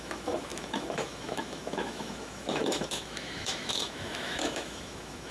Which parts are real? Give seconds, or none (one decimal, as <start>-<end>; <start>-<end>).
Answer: none